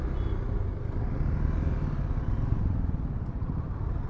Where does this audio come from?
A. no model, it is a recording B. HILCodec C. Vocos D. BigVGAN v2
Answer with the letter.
A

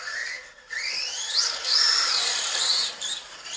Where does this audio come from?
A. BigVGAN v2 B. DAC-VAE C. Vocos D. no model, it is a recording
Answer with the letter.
A